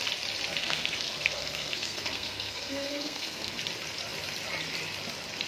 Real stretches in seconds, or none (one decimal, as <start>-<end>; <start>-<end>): 0.0-0.6; 3.6-5.5